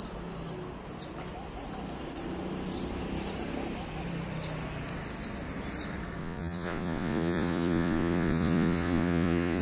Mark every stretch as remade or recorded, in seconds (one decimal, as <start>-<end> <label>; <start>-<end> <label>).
0.0-6.2 recorded; 6.2-9.6 remade